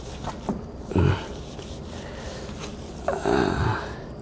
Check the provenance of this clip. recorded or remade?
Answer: recorded